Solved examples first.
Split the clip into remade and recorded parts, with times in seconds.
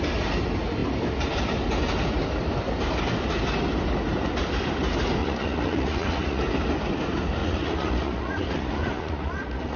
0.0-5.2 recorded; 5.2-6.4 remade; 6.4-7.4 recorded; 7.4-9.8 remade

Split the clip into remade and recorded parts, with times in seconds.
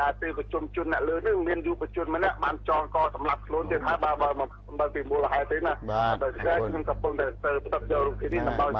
0.0-6.0 recorded; 6.0-7.6 remade; 7.6-8.8 recorded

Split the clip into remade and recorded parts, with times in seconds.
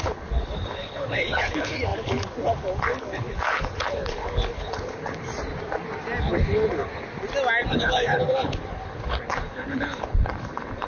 0.0-5.3 remade; 5.3-6.2 recorded; 6.2-6.9 remade; 6.9-7.7 recorded; 7.7-10.9 remade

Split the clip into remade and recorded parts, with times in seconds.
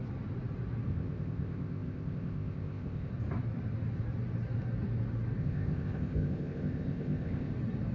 0.0-0.9 recorded; 0.9-3.1 remade; 3.1-5.4 recorded; 5.4-7.5 remade; 7.5-7.9 recorded